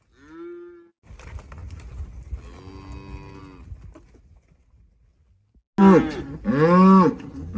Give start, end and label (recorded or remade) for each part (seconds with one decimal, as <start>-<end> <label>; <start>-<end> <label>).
0.0-7.6 recorded